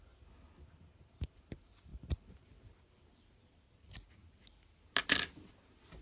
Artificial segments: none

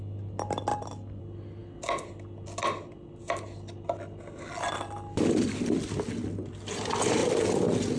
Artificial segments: none